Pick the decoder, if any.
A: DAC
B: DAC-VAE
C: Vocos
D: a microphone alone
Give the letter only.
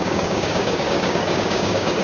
A